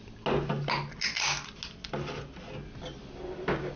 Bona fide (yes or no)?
yes